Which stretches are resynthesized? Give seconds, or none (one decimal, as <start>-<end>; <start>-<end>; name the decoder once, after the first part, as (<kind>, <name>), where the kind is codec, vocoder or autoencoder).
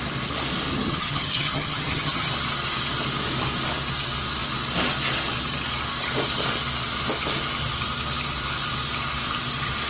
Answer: 0.7-2.3 (vocoder, HiFi-GAN)